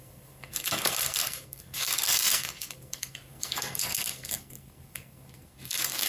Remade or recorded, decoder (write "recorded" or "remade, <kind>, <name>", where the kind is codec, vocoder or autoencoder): remade, codec, SNAC